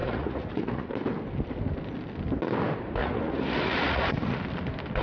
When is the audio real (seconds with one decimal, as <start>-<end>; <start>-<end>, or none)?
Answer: 0.9-3.0; 4.4-5.0